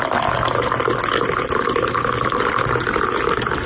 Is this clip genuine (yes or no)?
yes